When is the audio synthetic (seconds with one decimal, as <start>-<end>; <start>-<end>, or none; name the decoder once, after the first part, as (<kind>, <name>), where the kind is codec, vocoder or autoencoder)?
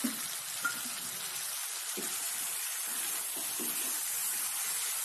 none